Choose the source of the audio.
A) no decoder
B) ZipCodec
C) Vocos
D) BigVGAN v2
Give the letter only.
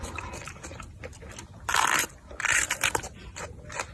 A